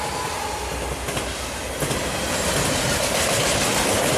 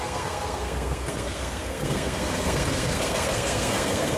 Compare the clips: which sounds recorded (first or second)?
first